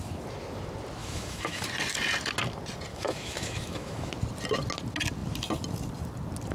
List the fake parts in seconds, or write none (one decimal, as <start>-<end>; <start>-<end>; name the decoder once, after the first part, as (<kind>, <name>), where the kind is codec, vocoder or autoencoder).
1.0-1.6 (autoencoder, DAC-VAE); 2.9-4.1